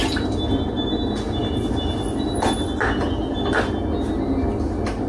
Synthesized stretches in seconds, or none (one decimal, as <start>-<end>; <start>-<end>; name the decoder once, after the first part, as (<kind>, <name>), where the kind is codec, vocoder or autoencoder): none